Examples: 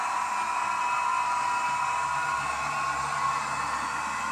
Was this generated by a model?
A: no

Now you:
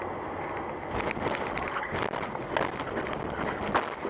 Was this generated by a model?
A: no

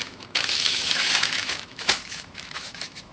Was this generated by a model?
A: yes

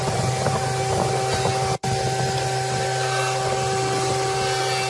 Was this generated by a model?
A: no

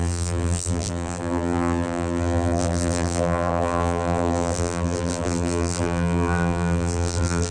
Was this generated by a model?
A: yes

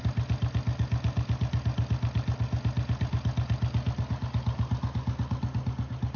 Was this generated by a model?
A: no